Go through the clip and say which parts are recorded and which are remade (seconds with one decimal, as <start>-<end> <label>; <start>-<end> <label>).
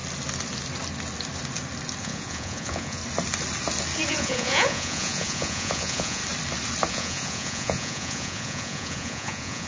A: 0.0-2.0 recorded; 2.0-3.0 remade; 3.0-4.1 recorded; 4.1-6.2 remade; 6.2-6.9 recorded; 6.9-9.7 remade